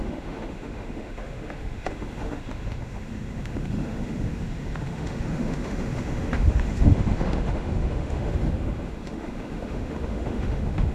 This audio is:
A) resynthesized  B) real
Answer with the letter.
A